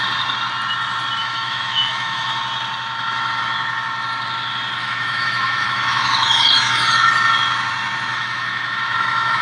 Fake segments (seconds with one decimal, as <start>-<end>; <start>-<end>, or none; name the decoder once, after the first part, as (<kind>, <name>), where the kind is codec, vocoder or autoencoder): 1.2-2.4 (autoencoder, DAC-VAE); 4.8-6.9; 8.1-9.4